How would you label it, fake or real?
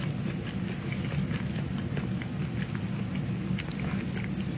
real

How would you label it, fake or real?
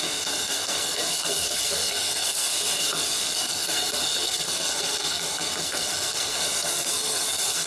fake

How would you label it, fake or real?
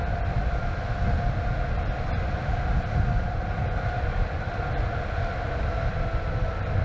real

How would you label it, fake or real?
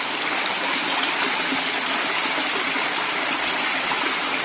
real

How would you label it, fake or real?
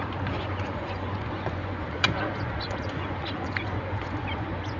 fake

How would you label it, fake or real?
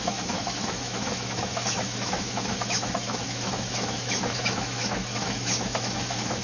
fake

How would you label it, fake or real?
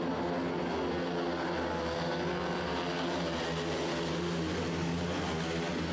real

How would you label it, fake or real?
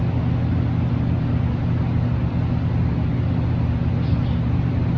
real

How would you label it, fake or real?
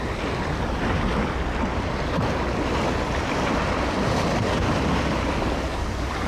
real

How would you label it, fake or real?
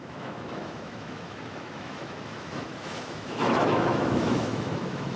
fake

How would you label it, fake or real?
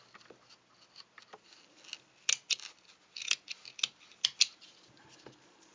real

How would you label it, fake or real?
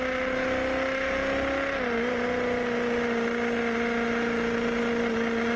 real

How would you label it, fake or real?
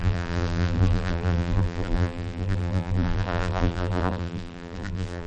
fake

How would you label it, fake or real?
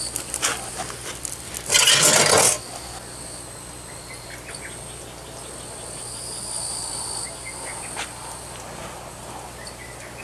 real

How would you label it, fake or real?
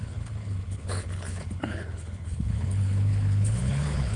fake